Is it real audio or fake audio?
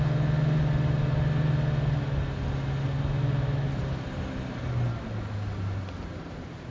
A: real